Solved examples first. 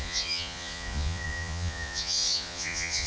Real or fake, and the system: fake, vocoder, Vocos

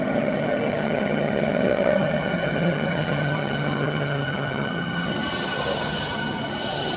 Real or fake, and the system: fake, vocoder, HiFi-GAN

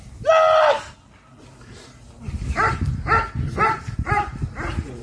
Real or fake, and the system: real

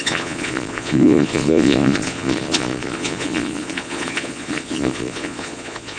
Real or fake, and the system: fake, vocoder, Vocos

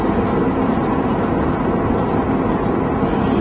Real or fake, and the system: real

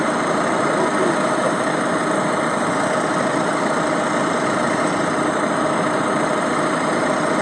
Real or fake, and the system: real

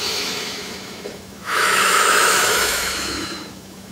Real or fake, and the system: fake, autoencoder, DAC-VAE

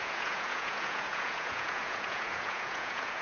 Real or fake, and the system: fake, vocoder, Vocos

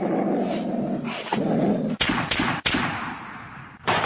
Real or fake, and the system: real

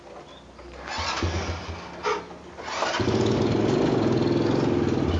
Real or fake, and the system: real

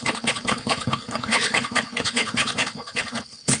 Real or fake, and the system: fake, codec, HILCodec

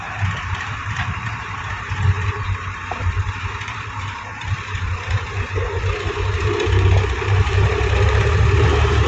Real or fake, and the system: fake, vocoder, BigVGAN v2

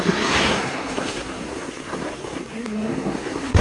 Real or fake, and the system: fake, codec, SNAC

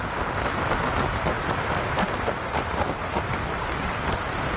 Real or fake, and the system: real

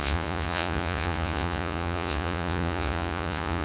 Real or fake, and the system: fake, vocoder, Vocos